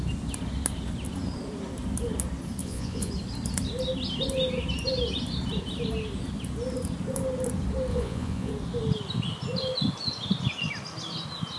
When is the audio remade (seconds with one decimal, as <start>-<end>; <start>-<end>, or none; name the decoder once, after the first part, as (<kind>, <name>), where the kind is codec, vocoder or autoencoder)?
2.6-3.1 (vocoder, Vocos); 7.9-8.5